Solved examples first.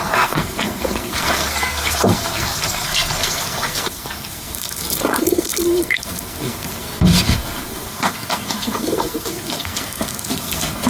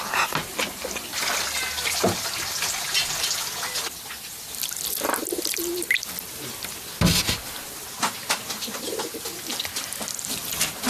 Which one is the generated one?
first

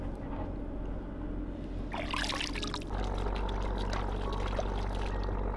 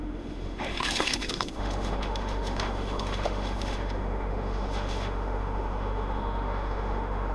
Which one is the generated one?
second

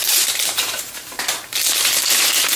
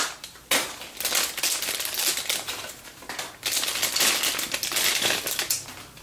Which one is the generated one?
first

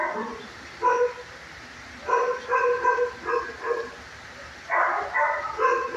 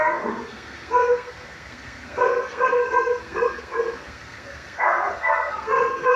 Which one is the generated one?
second